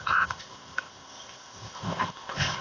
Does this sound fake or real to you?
fake